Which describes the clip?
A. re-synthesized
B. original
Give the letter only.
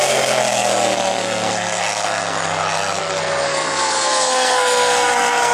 A